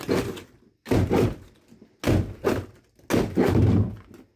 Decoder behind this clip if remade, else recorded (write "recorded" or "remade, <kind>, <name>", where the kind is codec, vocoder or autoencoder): recorded